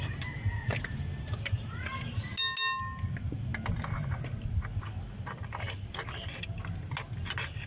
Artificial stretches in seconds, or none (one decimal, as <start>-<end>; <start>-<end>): none